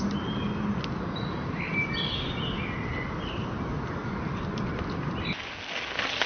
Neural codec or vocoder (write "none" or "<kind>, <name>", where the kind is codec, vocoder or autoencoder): none